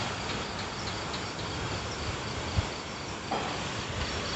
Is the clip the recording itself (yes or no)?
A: yes